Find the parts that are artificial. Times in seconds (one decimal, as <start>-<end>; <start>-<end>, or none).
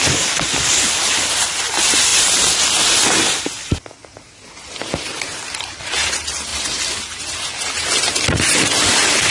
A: none